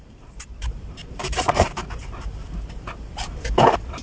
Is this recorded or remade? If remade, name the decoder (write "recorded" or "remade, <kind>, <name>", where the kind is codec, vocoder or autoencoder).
remade, vocoder, BigVGAN v2